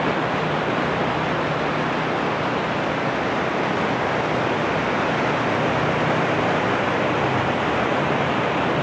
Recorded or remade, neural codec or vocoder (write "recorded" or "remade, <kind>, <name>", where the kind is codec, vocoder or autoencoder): recorded